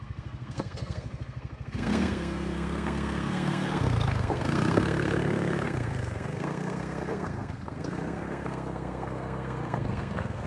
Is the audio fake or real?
fake